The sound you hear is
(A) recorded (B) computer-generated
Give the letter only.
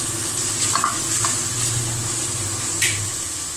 A